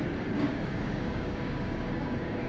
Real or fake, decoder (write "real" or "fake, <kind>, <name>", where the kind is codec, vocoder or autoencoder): fake, codec, DAC